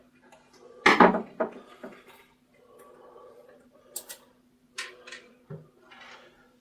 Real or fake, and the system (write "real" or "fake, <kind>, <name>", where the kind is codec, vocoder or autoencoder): real